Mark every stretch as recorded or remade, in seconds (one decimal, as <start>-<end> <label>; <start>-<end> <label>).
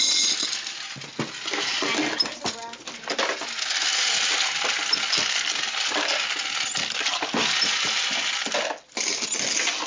0.0-9.9 recorded